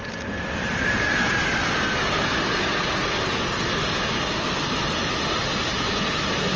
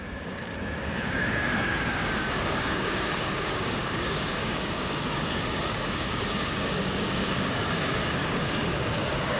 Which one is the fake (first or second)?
second